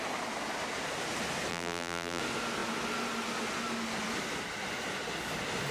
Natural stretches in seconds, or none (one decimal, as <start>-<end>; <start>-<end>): 0.0-1.5; 2.2-5.7